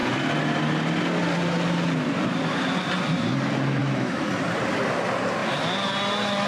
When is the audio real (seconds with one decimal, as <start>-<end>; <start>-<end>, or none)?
0.0-3.8; 4.3-6.5